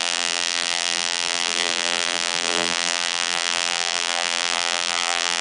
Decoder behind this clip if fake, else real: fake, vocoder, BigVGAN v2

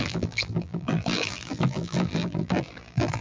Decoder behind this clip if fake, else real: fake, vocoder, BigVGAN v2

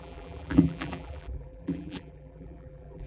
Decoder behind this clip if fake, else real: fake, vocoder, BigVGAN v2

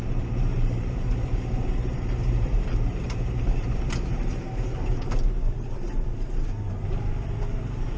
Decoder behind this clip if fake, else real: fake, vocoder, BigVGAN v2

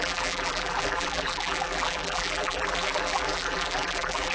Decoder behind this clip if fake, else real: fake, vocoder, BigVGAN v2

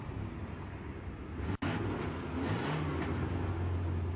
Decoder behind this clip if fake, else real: real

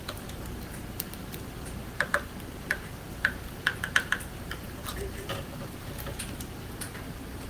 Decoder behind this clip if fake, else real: fake, vocoder, BigVGAN v2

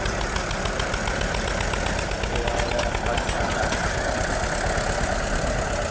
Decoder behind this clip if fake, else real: real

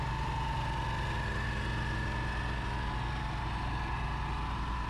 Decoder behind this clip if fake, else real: real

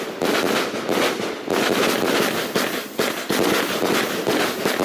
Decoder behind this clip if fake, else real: real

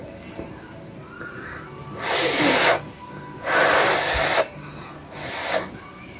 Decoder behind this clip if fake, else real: real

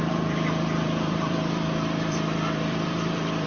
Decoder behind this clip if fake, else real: fake, vocoder, BigVGAN v2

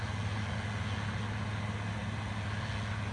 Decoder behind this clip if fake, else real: real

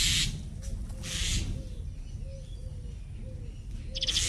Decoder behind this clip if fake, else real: real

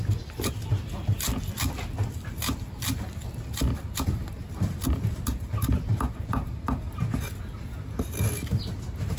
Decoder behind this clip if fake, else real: real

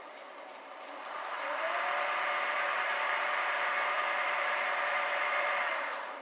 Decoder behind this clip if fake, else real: fake, vocoder, BigVGAN v2